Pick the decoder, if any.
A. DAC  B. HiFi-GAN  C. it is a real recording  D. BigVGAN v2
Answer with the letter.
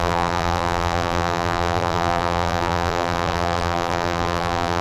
D